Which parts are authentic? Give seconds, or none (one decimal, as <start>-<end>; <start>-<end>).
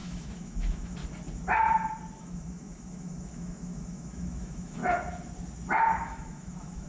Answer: 1.0-2.2; 4.8-5.9